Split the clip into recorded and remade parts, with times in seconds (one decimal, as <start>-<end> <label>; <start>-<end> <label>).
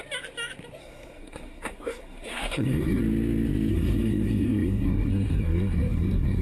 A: 0.0-0.8 recorded; 0.8-3.0 remade; 3.0-3.7 recorded; 3.7-6.4 remade